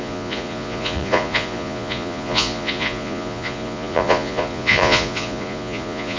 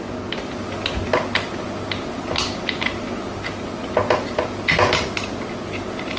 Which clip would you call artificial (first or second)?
first